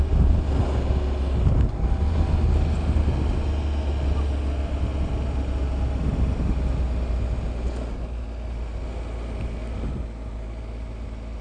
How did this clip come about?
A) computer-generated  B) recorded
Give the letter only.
B